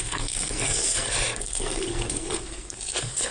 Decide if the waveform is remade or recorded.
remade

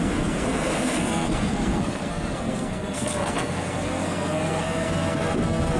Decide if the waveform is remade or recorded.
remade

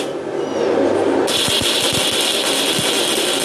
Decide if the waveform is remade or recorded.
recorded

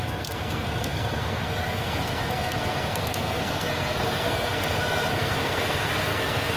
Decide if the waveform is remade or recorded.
remade